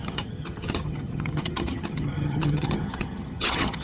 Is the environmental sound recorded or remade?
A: remade